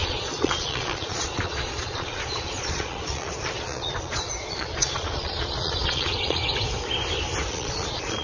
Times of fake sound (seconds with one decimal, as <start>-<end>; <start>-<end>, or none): 0.0-6.4; 7.5-8.2